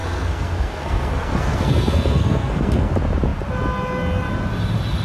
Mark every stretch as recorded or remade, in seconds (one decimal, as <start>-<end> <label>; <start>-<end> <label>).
0.0-2.9 remade; 2.9-5.0 recorded